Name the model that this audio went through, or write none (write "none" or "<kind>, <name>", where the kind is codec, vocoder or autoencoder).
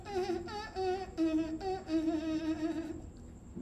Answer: none